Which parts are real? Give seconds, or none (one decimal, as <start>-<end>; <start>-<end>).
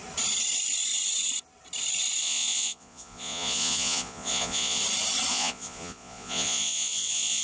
0.0-2.2; 4.8-5.3